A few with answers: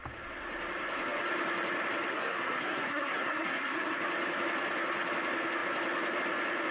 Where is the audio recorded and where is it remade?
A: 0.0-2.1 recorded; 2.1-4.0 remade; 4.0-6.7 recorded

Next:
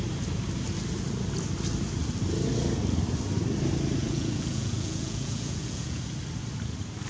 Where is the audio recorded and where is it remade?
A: 0.0-4.0 recorded; 4.0-6.0 remade; 6.0-7.1 recorded

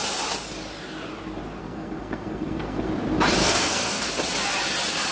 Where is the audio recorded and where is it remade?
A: 0.0-1.6 recorded; 1.6-2.9 remade; 2.9-3.4 recorded; 3.4-4.1 remade; 4.1-5.1 recorded

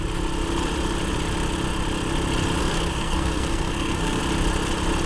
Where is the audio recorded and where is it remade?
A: 0.0-2.6 recorded; 2.6-4.2 remade; 4.2-5.1 recorded